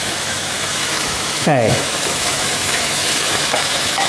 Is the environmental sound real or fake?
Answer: fake